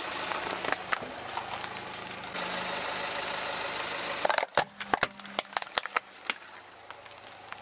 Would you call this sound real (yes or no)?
yes